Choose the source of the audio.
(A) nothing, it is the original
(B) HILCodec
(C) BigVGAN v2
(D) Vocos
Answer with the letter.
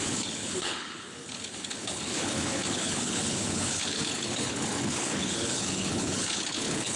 B